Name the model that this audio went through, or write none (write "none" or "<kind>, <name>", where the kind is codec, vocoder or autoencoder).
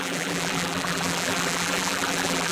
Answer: vocoder, BigVGAN v2